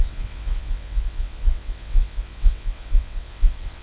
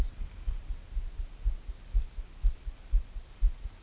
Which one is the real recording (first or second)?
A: second